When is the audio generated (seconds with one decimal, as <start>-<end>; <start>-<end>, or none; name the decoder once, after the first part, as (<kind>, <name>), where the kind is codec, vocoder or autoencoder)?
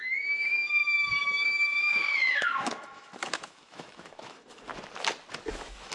0.0-4.7 (autoencoder, DAC-VAE); 5.5-5.9